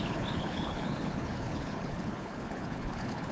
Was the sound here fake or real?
fake